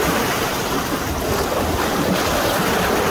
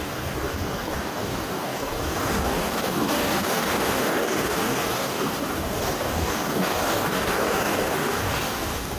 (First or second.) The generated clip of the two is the second